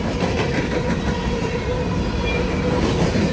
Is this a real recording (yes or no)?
yes